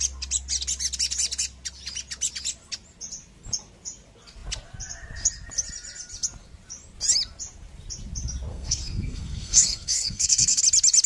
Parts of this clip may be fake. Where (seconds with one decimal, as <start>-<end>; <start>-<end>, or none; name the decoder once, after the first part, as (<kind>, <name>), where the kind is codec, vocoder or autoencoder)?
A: 8.5-10.6 (codec, SNAC)